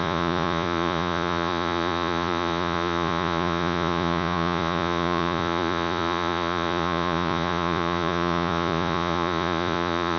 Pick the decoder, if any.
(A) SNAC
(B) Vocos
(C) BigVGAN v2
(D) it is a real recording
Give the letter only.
B